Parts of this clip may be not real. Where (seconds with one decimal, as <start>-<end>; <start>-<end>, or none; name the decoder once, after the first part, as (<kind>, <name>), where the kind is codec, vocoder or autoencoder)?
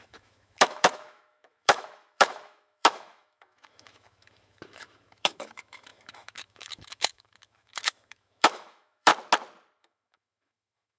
0.0-9.1 (autoencoder, DAC-VAE); 9.8-11.0